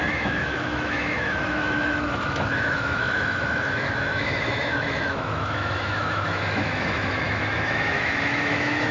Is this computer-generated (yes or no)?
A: yes